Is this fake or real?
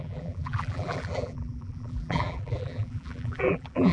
fake